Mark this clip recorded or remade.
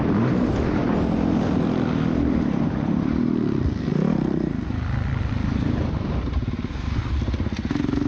recorded